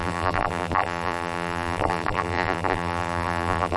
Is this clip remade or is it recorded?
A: remade